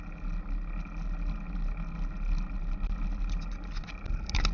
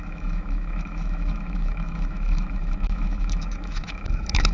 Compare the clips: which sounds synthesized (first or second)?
second